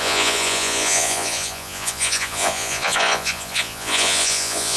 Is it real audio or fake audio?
fake